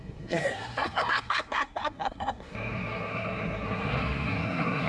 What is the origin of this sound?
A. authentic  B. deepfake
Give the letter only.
B